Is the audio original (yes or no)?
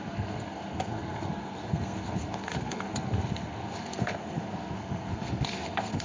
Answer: no